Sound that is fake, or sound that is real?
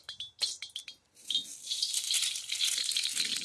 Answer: fake